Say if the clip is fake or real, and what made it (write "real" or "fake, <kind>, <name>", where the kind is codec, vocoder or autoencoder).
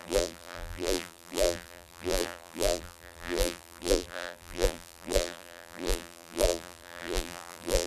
fake, vocoder, BigVGAN v2